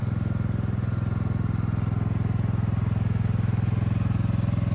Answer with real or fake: real